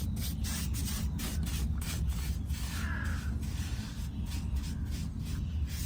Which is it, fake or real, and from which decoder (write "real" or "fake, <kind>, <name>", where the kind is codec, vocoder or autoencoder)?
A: real